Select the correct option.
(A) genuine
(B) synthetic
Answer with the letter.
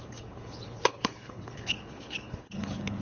B